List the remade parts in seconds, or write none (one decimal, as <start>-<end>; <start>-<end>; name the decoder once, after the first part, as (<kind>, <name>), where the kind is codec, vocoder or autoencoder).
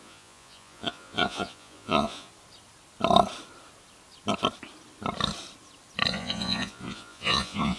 0.0-2.3 (vocoder, Vocos); 6.1-7.8